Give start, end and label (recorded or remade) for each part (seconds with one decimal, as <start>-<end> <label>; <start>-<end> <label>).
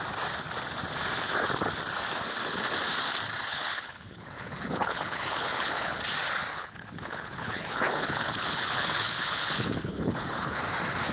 0.0-3.5 recorded; 3.5-6.0 remade; 6.0-6.5 recorded; 6.5-10.6 remade; 10.6-11.1 recorded